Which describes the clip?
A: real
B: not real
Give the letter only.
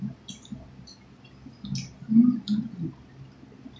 A